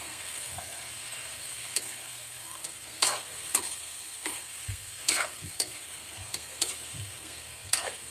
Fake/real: fake